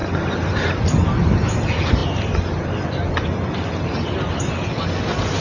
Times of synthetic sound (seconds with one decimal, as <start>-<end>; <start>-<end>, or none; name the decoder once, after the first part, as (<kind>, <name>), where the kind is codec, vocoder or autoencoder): none